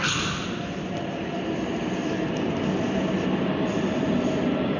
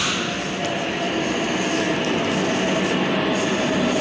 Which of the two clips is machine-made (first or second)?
first